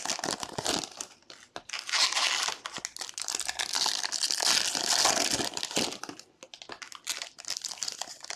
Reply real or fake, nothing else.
real